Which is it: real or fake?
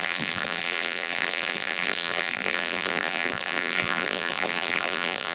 fake